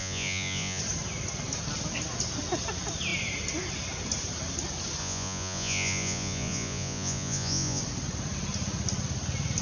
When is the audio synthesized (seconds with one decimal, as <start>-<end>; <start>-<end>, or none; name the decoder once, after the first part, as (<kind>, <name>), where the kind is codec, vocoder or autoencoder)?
0.0-0.8 (vocoder, Vocos); 5.0-7.8